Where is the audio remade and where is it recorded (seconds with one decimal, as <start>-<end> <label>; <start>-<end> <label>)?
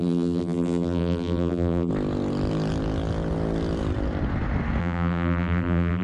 0.0-1.9 remade; 1.9-4.8 recorded; 4.8-6.0 remade